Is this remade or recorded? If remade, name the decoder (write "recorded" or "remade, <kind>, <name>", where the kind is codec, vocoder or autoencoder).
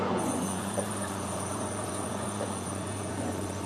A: remade, vocoder, Vocos